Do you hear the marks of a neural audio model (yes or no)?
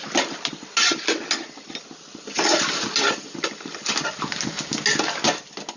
no